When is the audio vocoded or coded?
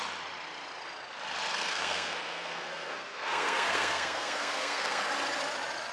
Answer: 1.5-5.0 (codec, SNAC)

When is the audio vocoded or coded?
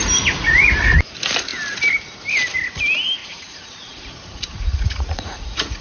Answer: 3.2-5.8 (vocoder, Vocos)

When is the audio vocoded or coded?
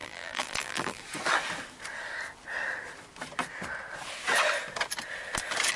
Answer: 0.0-1.0 (vocoder, BigVGAN v2)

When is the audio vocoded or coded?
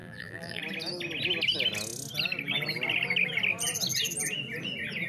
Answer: 0.0-0.6 (vocoder, BigVGAN v2)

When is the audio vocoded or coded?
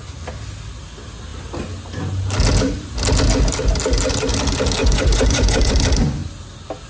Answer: 4.8-5.7 (vocoder, Vocos)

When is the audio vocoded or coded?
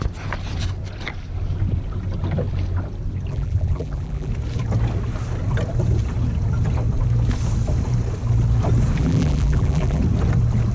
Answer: 3.3-4.3 (vocoder, BigVGAN v2); 9.0-10.0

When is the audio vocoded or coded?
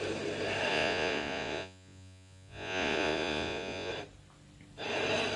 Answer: 0.7-3.9 (vocoder, Vocos)